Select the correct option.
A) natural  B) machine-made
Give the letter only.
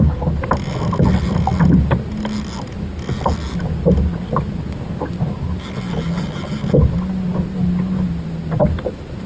A